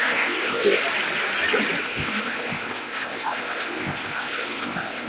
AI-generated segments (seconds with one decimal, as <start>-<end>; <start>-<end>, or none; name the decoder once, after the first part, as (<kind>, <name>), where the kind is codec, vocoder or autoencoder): 0.0-0.8 (codec, ZipCodec); 1.8-5.1